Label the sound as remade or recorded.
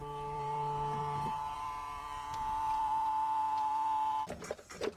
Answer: remade